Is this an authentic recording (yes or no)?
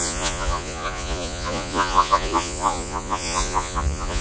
no